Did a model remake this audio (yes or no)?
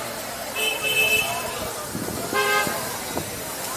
no